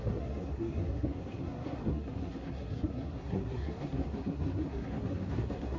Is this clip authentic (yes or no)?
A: no